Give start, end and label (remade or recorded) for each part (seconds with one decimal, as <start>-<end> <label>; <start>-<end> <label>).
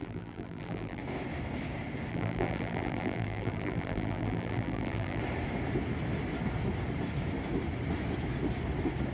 0.0-1.0 remade; 1.0-2.1 recorded; 2.1-5.2 remade; 5.2-9.1 recorded